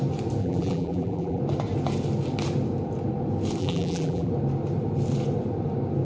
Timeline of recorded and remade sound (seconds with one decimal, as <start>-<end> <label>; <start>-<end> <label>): 0.0-0.4 recorded; 0.4-1.4 remade; 1.4-3.6 recorded; 3.6-4.3 remade; 4.3-6.0 recorded